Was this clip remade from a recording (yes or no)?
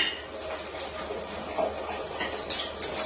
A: no